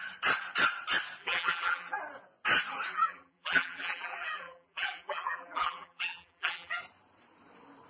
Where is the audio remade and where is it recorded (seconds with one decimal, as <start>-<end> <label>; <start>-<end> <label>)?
0.0-1.2 recorded; 1.2-2.0 remade; 2.0-2.9 recorded; 2.9-6.8 remade; 6.8-7.9 recorded